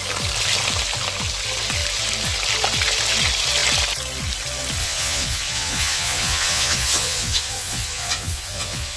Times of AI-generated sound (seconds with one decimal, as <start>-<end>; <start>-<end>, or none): 4.8-9.0